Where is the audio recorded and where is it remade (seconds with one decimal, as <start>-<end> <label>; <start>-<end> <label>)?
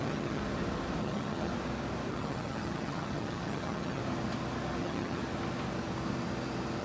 0.0-0.4 remade; 0.4-1.0 recorded; 1.0-1.5 remade; 1.5-2.1 recorded; 2.1-4.0 remade; 4.0-4.8 recorded; 4.8-5.2 remade; 5.2-6.8 recorded